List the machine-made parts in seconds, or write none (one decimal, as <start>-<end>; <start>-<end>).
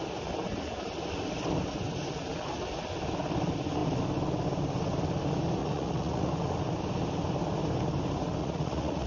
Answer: 5.6-6.3; 8.4-9.1